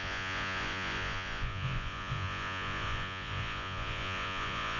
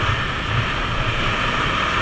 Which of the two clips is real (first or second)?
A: second